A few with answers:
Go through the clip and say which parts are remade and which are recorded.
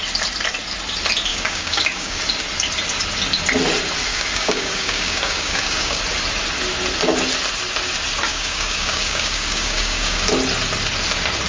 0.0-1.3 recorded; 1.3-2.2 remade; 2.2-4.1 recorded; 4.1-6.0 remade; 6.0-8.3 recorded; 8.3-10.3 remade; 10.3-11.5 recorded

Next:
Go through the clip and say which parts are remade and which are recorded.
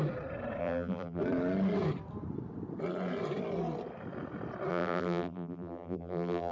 0.0-0.6 recorded; 0.6-1.2 remade; 1.2-4.7 recorded; 4.7-6.5 remade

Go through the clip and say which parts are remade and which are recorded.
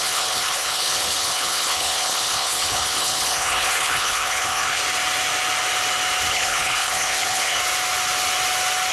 0.0-4.8 remade; 4.8-6.3 recorded; 6.3-7.6 remade; 7.6-8.9 recorded